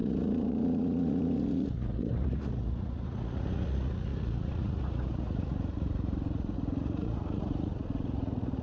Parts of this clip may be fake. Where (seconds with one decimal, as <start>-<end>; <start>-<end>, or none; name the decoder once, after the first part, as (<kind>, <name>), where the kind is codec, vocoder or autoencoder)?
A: 0.0-8.6 (vocoder, Vocos)